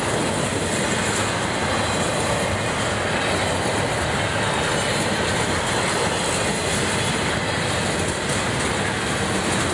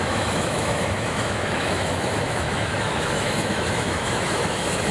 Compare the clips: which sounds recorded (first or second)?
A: first